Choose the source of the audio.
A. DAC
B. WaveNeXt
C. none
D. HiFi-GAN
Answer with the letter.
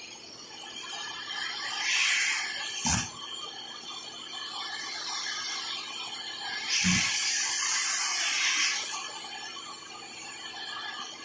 C